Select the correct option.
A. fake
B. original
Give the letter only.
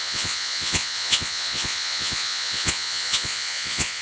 A